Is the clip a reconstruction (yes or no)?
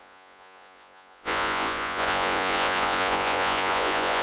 yes